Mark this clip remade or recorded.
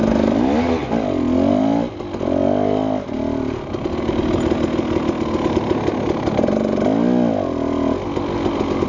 recorded